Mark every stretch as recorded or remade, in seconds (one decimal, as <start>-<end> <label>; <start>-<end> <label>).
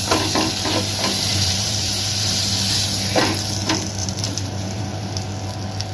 0.0-1.3 recorded; 1.3-2.5 remade; 2.5-4.0 recorded; 4.0-5.2 remade; 5.2-5.9 recorded